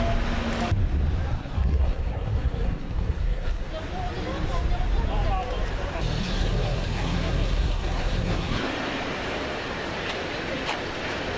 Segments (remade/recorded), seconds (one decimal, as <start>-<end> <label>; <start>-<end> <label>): 0.0-1.3 recorded; 1.3-3.7 remade; 3.7-6.2 recorded; 6.2-8.7 remade; 8.7-11.4 recorded